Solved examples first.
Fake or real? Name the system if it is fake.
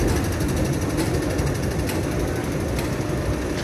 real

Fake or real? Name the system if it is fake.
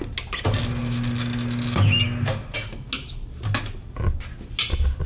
real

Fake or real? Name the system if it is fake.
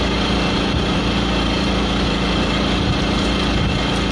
fake, vocoder, BigVGAN v2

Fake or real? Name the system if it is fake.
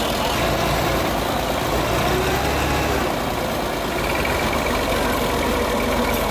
real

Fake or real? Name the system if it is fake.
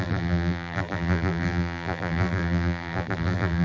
fake, vocoder, BigVGAN v2